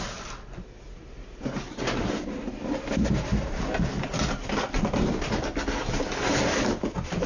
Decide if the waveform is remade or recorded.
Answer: recorded